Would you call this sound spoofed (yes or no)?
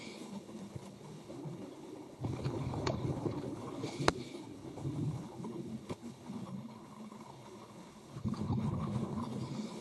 yes